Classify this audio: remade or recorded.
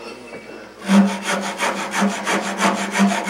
recorded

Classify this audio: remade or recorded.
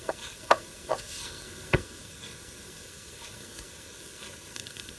remade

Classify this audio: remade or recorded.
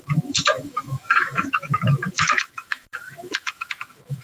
remade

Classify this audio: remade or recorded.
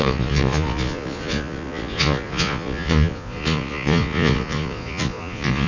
remade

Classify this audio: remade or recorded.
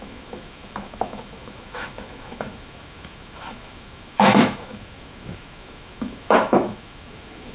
remade